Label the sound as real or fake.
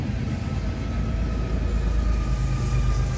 real